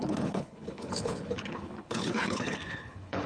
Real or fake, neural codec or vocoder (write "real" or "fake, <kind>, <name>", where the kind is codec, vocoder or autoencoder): fake, codec, HILCodec